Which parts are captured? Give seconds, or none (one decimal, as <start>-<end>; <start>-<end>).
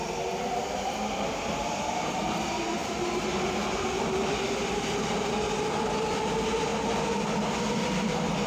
0.0-8.5